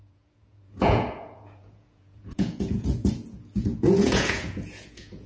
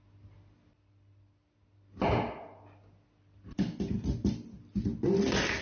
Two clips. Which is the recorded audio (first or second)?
second